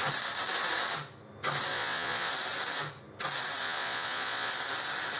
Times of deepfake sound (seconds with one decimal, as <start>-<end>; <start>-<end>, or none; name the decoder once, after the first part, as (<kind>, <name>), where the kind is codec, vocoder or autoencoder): 1.7-2.3 (vocoder, Vocos); 3.6-4.5